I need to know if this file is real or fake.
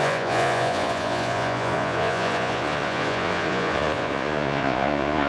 fake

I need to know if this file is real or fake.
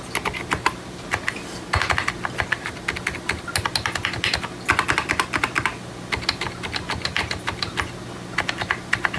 real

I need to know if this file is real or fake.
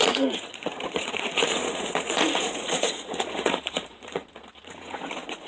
fake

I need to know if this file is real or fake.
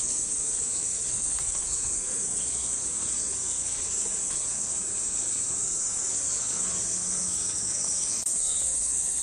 fake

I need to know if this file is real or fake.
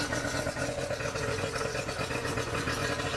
fake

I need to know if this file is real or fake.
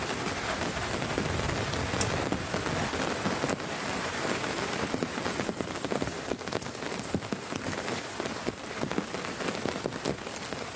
real